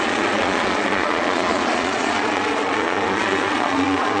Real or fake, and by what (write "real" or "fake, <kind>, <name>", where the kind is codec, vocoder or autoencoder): fake, vocoder, Vocos